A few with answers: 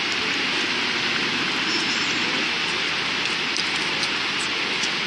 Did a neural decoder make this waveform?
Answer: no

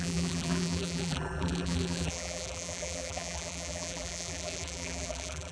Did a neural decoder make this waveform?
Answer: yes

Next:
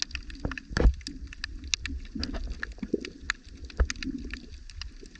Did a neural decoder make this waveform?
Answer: no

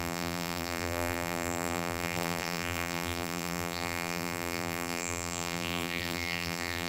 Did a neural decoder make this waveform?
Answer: yes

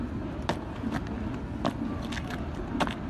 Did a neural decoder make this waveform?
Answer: no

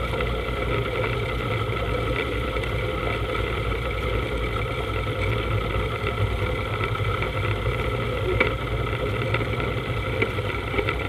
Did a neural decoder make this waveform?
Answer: no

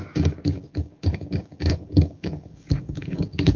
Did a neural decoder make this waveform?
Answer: yes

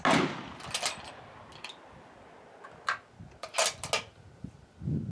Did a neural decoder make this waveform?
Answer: no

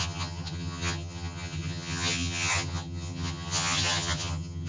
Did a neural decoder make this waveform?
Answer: yes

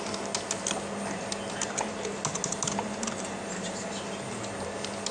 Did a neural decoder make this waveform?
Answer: no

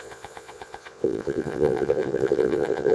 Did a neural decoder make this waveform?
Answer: yes